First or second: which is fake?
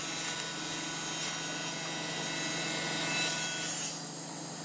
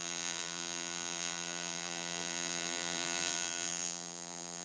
second